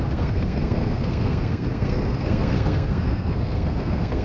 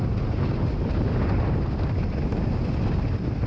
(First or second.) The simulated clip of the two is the first